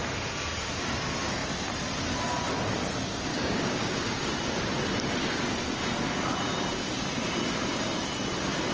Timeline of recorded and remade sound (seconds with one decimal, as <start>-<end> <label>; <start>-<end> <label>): 0.0-3.3 recorded; 3.3-4.3 remade; 4.3-8.7 recorded